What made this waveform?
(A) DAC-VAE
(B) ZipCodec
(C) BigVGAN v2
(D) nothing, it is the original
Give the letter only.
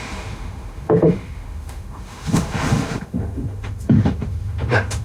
A